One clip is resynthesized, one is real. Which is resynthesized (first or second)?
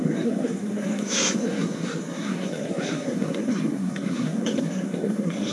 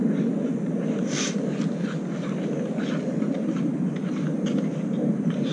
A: first